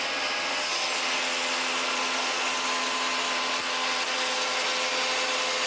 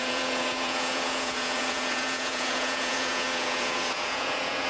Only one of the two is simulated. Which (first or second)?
second